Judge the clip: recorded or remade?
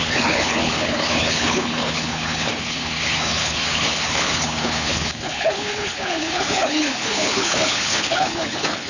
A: remade